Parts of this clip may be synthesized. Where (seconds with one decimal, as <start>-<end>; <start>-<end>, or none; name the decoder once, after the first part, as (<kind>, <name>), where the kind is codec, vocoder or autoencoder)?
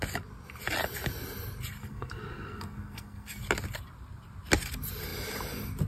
1.8-3.4 (codec, SNAC)